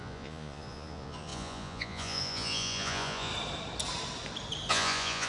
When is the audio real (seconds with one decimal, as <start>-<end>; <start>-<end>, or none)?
3.3-4.7